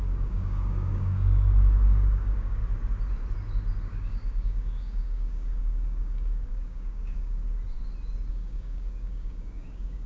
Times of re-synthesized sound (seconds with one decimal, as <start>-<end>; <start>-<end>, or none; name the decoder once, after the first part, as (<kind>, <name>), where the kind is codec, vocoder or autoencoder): 0.0-2.6 (codec, DAC); 3.8-7.4; 8.3-10.1